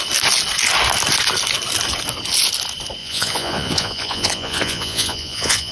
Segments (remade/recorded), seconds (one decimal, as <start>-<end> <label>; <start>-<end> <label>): 0.0-3.0 recorded; 3.0-5.7 remade